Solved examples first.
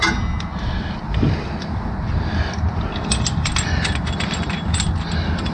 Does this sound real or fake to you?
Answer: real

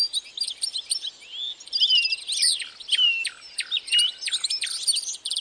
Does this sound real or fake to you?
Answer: real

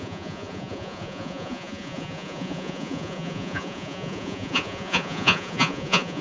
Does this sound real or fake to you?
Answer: fake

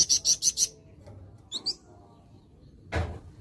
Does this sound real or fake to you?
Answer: real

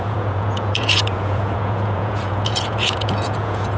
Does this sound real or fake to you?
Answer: fake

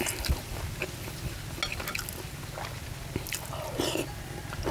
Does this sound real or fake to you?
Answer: real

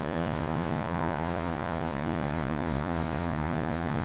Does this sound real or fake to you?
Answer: fake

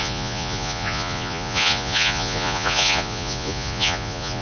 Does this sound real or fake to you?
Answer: fake